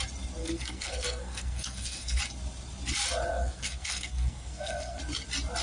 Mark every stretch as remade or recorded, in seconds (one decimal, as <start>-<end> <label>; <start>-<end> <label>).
0.0-0.4 recorded; 0.4-2.2 remade; 2.2-3.3 recorded; 3.3-5.0 remade; 5.0-5.6 recorded